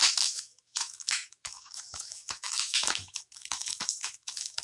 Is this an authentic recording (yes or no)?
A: no